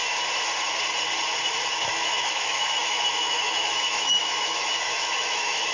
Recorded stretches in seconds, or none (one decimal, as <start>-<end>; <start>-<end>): 0.0-1.8